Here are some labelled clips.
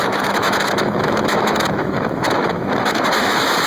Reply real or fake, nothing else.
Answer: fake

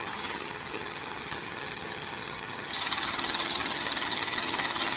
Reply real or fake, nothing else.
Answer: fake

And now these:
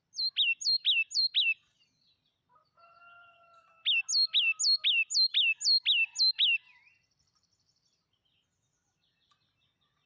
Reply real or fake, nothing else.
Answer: real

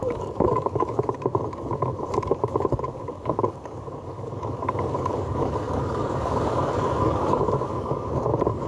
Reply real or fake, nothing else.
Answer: fake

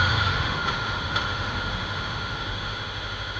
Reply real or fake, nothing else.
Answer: fake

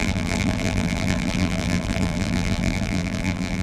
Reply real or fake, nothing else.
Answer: fake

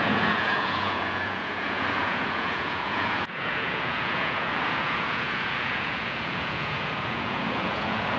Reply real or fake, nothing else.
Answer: fake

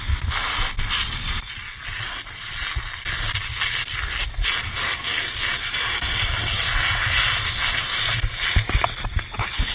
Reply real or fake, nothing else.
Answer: real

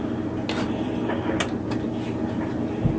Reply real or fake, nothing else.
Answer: real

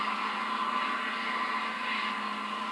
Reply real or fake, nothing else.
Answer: real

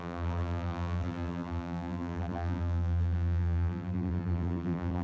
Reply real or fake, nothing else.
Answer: fake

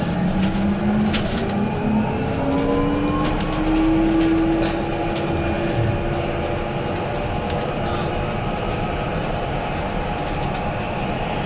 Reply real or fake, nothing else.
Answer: real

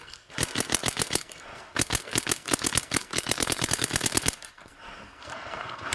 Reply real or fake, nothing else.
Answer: fake